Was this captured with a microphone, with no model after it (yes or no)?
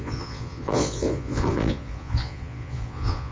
no